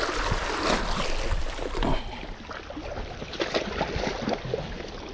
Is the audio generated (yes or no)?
no